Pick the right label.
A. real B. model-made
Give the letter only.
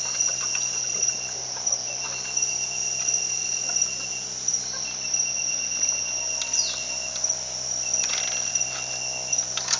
A